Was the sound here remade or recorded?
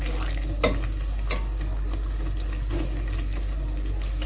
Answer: recorded